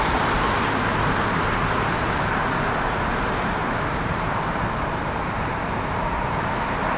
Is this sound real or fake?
fake